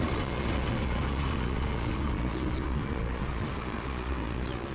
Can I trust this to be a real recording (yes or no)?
no